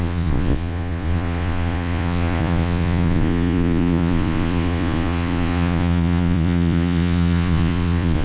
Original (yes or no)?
no